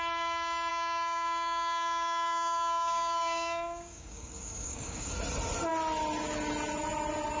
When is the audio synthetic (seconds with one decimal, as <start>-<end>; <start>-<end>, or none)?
0.7-5.1